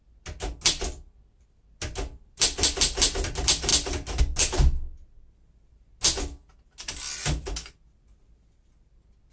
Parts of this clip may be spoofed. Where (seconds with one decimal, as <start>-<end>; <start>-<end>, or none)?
none